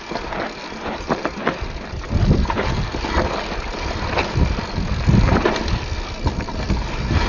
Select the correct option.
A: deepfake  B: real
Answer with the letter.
B